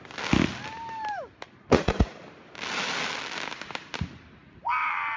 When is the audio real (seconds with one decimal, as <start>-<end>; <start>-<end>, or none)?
0.0-1.6; 2.2-5.2